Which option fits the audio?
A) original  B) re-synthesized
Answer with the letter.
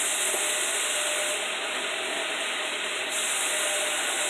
A